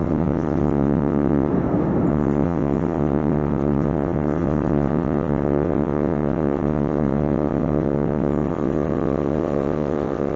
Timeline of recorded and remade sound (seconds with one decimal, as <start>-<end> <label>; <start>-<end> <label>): 0.0-1.5 remade; 1.5-2.1 recorded; 2.1-10.4 remade